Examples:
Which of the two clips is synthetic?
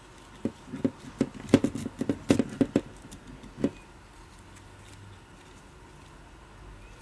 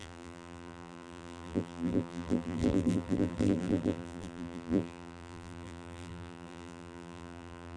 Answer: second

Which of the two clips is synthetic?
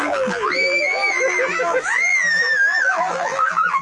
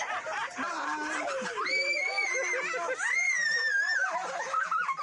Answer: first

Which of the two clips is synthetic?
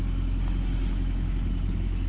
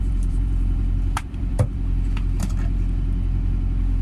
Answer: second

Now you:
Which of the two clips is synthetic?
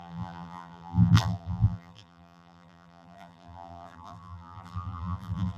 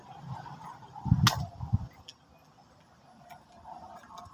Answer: first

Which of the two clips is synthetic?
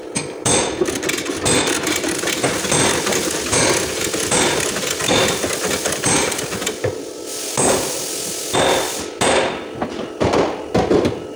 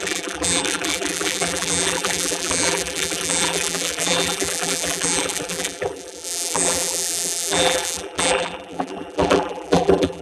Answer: second